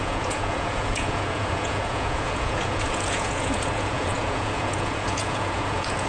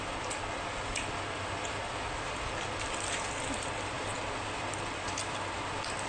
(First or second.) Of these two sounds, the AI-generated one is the first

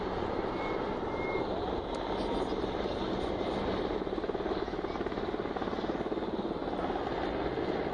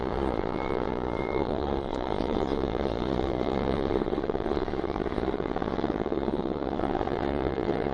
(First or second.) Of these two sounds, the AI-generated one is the second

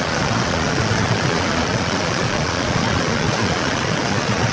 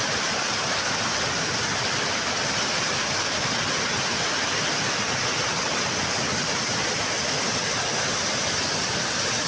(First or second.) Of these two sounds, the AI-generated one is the first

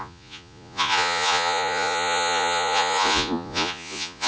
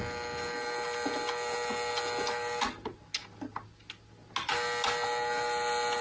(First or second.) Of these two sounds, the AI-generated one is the first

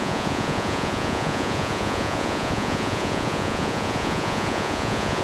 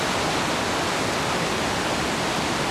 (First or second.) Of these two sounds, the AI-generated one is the first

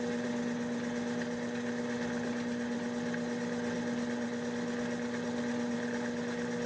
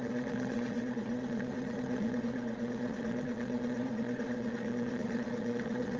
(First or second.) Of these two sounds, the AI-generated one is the second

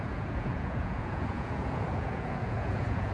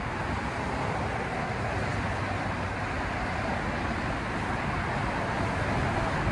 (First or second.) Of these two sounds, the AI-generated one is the first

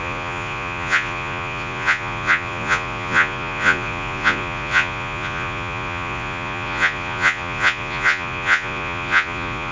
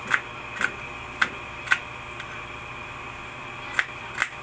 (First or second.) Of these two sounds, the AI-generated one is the first